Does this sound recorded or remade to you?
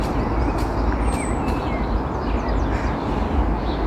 recorded